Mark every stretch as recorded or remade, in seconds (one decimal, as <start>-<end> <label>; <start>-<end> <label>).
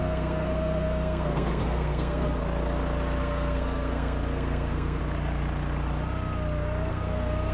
0.0-2.4 remade; 2.4-3.2 recorded; 3.2-5.0 remade; 5.0-6.9 recorded; 6.9-7.5 remade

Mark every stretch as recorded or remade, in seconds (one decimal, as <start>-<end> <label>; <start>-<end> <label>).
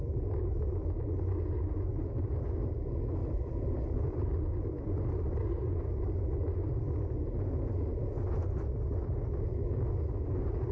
0.0-3.2 recorded; 3.2-5.7 remade; 5.7-7.9 recorded; 7.9-9.1 remade; 9.1-10.7 recorded